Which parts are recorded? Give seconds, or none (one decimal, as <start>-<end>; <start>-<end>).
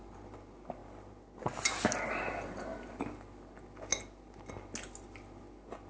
0.0-5.9